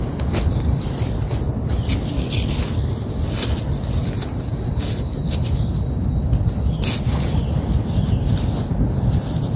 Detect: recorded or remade recorded